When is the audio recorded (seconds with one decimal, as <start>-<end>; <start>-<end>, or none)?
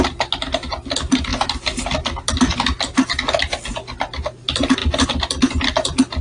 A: 0.0-6.2